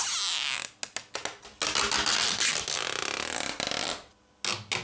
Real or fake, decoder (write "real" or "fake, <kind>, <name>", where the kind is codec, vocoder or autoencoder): real